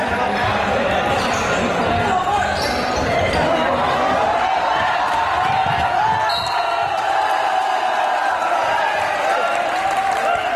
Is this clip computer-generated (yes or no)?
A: yes